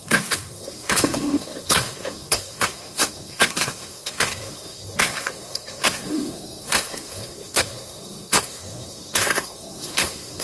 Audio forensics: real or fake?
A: fake